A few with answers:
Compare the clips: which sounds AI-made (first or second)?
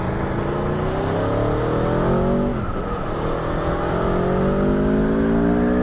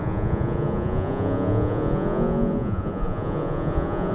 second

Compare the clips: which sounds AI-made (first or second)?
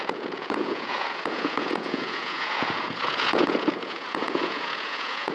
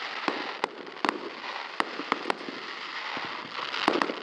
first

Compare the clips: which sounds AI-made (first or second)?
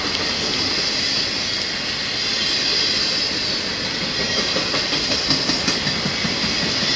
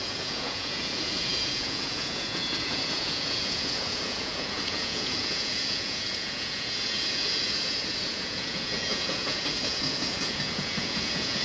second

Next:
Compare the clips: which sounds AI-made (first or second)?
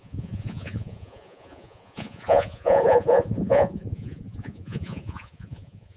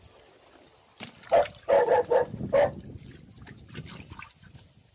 first